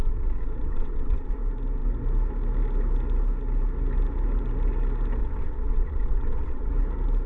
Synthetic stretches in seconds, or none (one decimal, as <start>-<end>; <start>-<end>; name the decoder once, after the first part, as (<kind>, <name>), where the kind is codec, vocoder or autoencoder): 0.0-1.3 (vocoder, WaveNeXt); 5.2-6.7